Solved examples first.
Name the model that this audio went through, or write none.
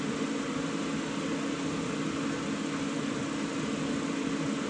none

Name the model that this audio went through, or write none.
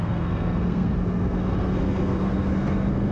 codec, SNAC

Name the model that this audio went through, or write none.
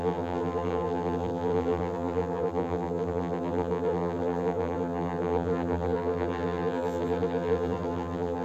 vocoder, BigVGAN v2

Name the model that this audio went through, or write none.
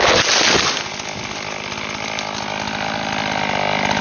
none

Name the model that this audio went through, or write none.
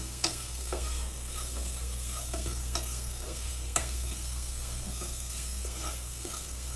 codec, SNAC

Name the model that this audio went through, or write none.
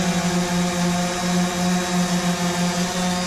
none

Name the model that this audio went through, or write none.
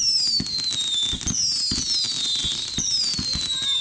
none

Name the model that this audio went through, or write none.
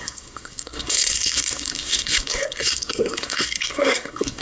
codec, SNAC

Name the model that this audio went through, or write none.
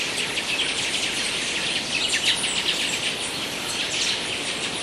none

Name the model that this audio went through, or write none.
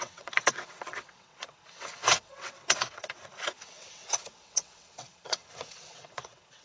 vocoder, WaveNeXt